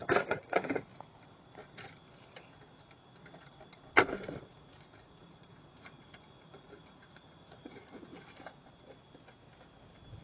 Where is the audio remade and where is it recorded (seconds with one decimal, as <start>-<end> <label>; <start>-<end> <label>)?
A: 0.0-0.9 remade; 0.9-4.4 recorded; 4.4-8.1 remade; 8.1-10.2 recorded